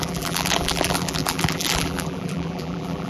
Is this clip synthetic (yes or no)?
yes